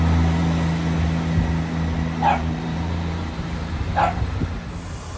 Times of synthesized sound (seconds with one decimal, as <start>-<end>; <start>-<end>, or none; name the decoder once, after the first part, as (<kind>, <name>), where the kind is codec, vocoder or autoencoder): 2.3-4.0 (vocoder, BigVGAN v2)